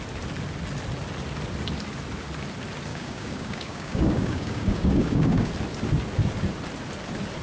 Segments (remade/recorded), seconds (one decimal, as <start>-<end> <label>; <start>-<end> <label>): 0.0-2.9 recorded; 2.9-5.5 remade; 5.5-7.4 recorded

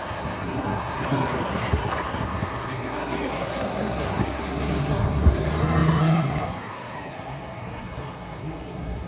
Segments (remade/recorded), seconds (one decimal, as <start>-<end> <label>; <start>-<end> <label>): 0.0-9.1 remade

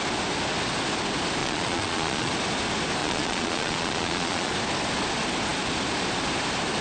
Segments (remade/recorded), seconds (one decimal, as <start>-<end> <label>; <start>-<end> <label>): 0.0-1.4 recorded; 1.4-2.3 remade; 2.3-3.0 recorded; 3.0-4.5 remade; 4.5-6.8 recorded

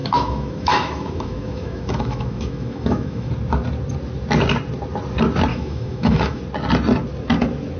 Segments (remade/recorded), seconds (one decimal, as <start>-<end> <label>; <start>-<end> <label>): 0.0-3.3 remade; 3.3-5.5 recorded; 5.5-6.4 remade; 6.4-7.8 recorded